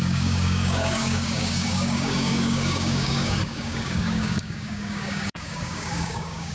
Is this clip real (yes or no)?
no